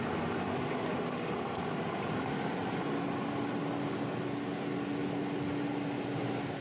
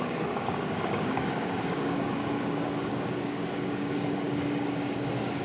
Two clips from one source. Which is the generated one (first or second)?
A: second